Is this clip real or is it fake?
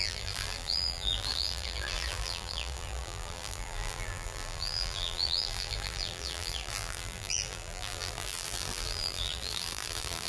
fake